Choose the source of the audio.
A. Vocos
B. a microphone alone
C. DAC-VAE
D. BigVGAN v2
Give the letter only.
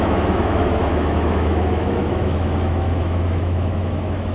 C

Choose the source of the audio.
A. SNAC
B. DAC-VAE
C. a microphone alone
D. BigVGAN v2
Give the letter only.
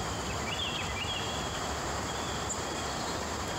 C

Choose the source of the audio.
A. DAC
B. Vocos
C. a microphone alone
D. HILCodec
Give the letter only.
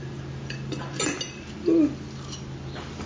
C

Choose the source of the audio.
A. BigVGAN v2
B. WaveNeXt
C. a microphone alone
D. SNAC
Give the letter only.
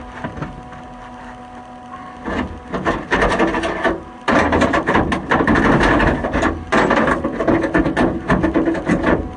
C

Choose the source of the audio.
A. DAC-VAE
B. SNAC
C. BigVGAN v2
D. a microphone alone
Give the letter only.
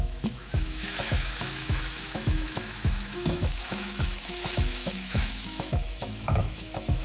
A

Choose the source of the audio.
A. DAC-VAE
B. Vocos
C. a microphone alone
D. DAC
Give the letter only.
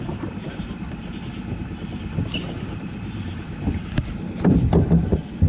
C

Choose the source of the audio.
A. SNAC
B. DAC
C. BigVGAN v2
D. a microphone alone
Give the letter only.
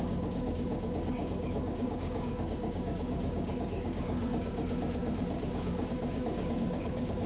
B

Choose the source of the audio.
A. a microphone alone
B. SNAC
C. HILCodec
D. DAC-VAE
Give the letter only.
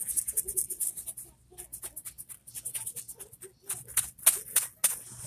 A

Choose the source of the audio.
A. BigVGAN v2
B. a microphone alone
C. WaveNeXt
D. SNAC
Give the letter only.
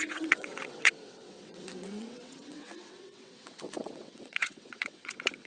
C